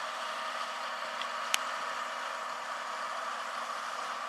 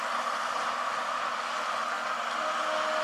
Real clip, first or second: second